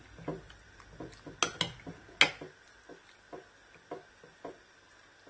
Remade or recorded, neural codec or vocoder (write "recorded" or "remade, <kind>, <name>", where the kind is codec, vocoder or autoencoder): recorded